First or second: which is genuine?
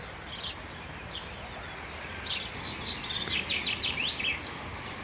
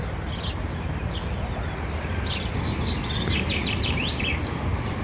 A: first